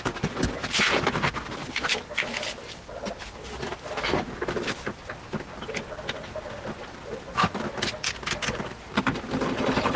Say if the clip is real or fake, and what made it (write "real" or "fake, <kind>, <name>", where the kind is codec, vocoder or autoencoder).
real